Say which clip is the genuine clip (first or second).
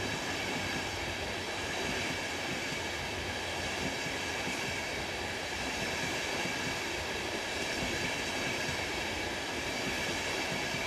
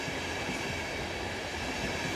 second